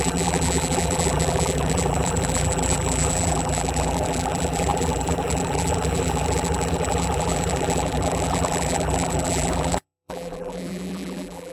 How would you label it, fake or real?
fake